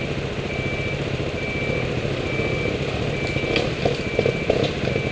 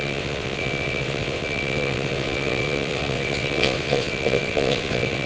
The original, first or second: first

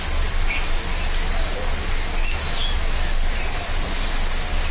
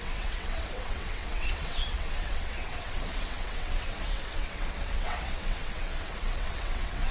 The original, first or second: first